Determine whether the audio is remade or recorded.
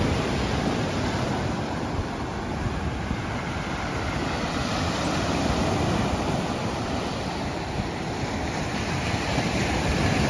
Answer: remade